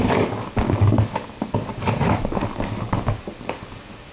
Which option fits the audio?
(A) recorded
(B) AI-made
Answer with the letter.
B